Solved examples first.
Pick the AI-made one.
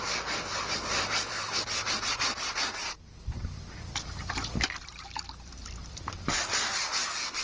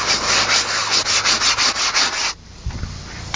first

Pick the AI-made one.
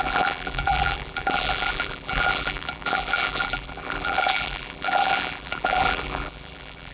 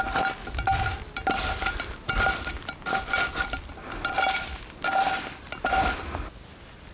first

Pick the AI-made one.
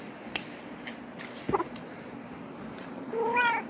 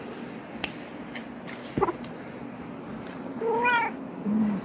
first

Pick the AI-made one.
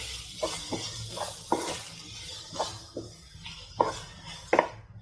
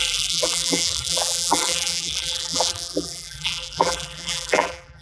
second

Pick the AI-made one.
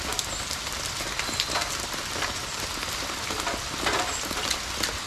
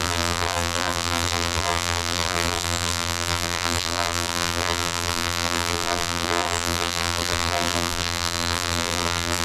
second